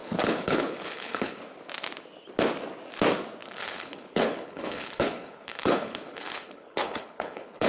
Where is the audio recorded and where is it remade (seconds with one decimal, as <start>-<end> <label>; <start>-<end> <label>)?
0.0-1.4 remade; 1.4-3.4 recorded; 3.4-7.7 remade